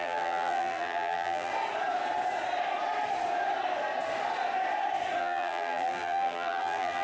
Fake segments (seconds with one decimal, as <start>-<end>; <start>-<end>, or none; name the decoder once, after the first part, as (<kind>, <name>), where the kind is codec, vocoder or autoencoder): 0.0-1.5 (vocoder, BigVGAN v2); 5.2-7.0